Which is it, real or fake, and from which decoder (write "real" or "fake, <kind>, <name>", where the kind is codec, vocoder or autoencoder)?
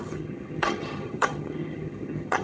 fake, vocoder, HiFi-GAN